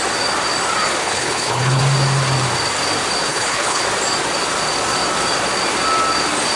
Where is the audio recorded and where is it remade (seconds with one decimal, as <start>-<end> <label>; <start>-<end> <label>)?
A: 0.0-1.0 recorded; 1.0-1.8 remade; 1.8-3.3 recorded; 3.3-3.8 remade; 3.8-6.6 recorded